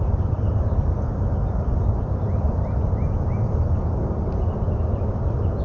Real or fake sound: real